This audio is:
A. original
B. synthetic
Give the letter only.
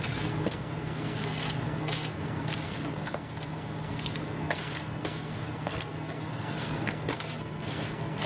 B